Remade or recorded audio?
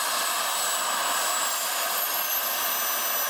recorded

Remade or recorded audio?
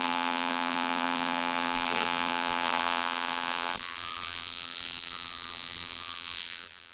remade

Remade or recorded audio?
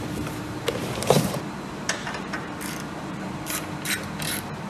remade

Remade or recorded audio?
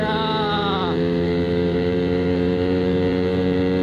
remade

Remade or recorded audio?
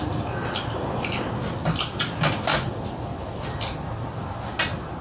recorded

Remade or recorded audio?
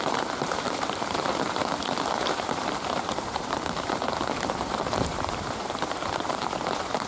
remade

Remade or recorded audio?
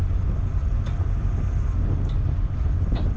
recorded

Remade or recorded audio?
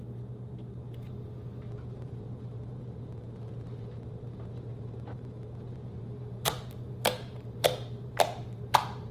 remade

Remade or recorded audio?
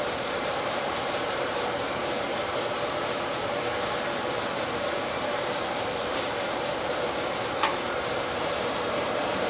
remade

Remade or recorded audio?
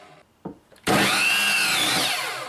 recorded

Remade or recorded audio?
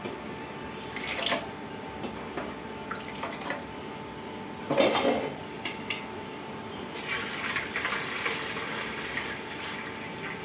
recorded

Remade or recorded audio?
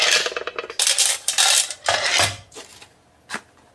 recorded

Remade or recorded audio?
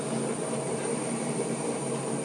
remade